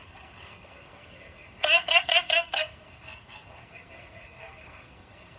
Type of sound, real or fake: fake